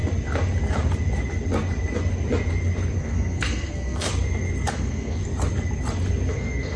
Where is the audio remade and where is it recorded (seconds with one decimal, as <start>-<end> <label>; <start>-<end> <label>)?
0.0-3.0 recorded; 3.0-4.1 remade; 4.1-4.7 recorded; 4.7-5.2 remade; 5.2-6.3 recorded; 6.3-6.8 remade